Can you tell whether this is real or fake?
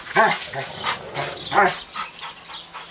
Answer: real